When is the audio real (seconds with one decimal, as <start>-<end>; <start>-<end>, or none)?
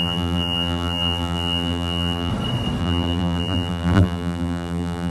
2.3-2.8